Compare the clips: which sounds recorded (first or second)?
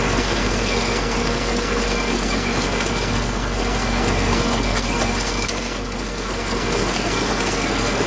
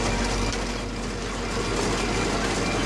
second